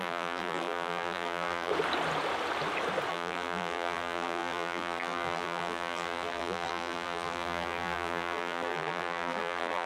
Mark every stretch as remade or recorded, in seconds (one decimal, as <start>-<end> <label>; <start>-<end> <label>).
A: 0.0-1.7 remade; 1.7-3.1 recorded; 3.1-9.9 remade